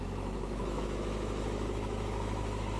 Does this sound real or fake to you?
fake